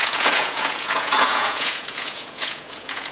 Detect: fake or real fake